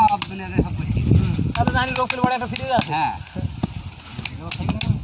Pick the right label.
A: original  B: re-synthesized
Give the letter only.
A